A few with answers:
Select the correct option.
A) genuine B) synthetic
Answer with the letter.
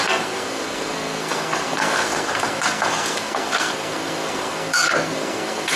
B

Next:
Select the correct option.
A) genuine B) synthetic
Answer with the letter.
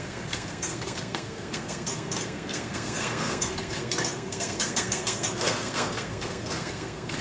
B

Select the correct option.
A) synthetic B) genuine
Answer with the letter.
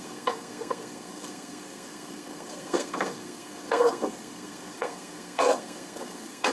A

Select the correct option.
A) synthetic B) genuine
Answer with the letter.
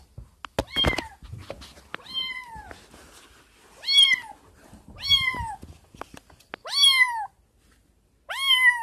B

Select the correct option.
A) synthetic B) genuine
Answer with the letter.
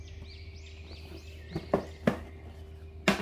B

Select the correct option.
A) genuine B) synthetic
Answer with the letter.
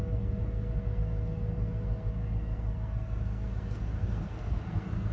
B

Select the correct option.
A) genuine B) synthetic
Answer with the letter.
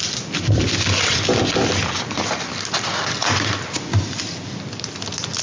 A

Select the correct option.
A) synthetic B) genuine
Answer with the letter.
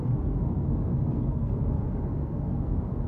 A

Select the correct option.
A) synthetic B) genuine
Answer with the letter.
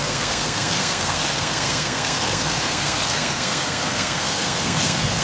A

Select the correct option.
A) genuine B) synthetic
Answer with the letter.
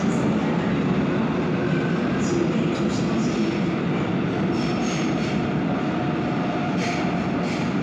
A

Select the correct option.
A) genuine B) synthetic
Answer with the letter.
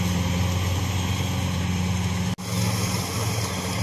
A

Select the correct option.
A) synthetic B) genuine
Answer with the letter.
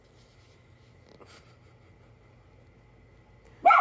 B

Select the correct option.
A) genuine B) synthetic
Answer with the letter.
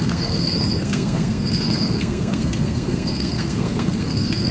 B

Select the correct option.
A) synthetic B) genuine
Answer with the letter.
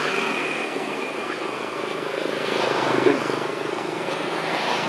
A